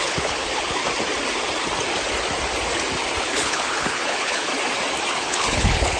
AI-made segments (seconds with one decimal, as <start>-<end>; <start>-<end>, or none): 0.0-0.8; 3.2-4.5; 5.1-6.0